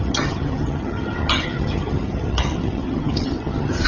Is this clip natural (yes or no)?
no